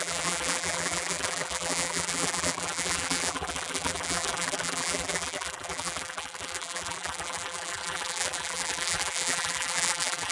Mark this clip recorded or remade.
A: remade